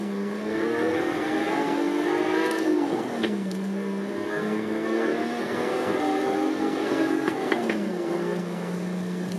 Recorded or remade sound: remade